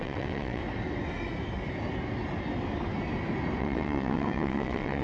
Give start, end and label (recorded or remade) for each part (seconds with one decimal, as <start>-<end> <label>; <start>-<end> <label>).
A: 0.0-0.6 remade; 0.6-3.6 recorded; 3.6-5.0 remade

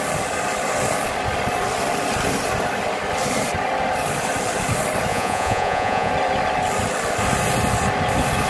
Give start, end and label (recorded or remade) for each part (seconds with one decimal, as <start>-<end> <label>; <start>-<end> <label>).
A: 0.0-5.1 recorded; 5.1-6.1 remade; 6.1-8.5 recorded

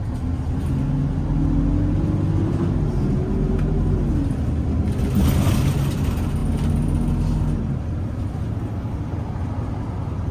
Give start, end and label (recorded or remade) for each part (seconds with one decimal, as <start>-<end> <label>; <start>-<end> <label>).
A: 0.0-10.3 recorded

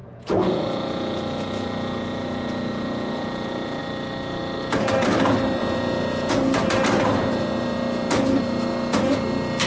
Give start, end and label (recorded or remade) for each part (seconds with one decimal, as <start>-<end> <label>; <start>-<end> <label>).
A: 0.0-3.8 remade; 3.8-5.6 recorded; 5.6-6.3 remade; 6.3-9.7 recorded

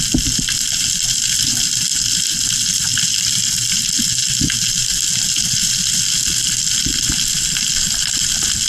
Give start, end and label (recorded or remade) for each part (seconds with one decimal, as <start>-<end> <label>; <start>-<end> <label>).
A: 0.0-8.7 recorded